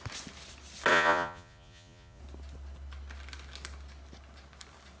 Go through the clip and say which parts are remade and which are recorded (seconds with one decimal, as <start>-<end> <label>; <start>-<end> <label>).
0.0-0.9 recorded; 0.9-2.2 remade; 2.2-5.0 recorded